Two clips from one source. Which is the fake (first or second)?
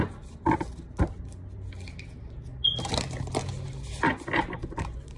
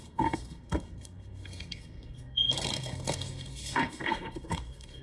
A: second